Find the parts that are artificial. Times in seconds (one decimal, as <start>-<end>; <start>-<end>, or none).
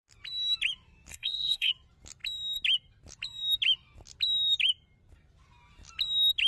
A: 1.1-1.7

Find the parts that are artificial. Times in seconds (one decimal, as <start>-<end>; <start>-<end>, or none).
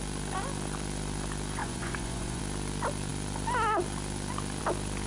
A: 1.6-2.4